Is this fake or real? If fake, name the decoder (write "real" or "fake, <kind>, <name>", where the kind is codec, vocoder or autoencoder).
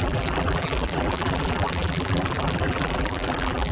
fake, vocoder, BigVGAN v2